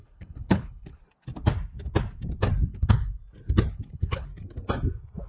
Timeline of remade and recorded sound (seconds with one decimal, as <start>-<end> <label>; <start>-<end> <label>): 0.0-1.0 remade; 1.0-2.7 recorded; 2.7-3.2 remade; 3.2-3.7 recorded; 3.7-4.3 remade; 4.3-5.3 recorded